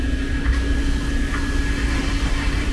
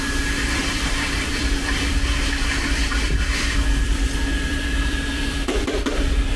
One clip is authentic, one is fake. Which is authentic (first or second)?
first